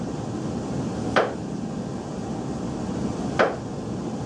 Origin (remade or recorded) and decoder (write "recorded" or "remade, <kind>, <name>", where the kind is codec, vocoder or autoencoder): recorded